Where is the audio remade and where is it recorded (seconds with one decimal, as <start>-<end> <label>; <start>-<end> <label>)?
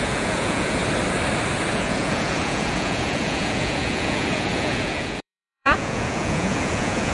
0.0-0.8 remade; 0.8-1.7 recorded; 1.7-7.1 remade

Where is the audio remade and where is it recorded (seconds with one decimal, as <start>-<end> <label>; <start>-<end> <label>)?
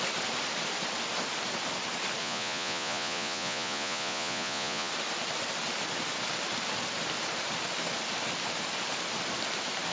0.0-2.2 recorded; 2.2-4.9 remade; 4.9-9.9 recorded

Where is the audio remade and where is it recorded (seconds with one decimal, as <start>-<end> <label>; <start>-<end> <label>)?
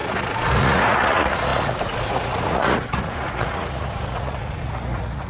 0.0-5.3 remade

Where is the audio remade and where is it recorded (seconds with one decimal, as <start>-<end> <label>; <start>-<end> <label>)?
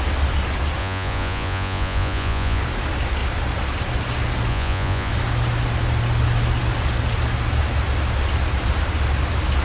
0.0-0.8 recorded; 0.8-2.6 remade; 2.6-4.5 recorded; 4.5-5.1 remade; 5.1-9.6 recorded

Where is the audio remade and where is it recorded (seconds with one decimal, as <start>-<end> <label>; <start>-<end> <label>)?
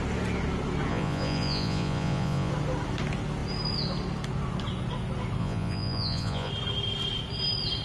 0.0-0.9 recorded; 0.9-2.5 remade; 2.5-5.4 recorded; 5.4-6.5 remade; 6.5-7.8 recorded